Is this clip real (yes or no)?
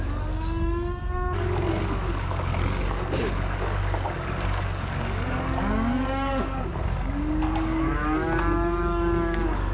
no